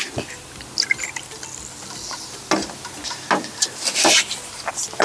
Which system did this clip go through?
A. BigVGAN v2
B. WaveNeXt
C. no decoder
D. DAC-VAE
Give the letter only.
C